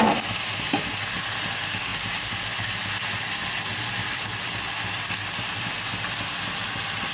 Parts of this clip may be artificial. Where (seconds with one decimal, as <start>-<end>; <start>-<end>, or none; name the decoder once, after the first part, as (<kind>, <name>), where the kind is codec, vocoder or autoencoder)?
1.9-2.8 (vocoder, BigVGAN v2)